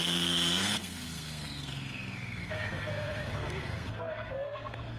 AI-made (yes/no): yes